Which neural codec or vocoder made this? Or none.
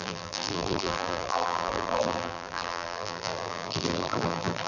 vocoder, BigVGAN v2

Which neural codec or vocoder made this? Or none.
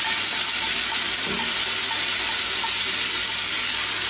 none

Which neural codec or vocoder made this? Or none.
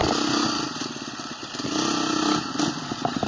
none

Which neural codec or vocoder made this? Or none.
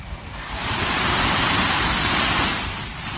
none